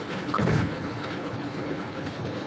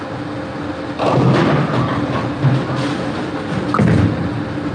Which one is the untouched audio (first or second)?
second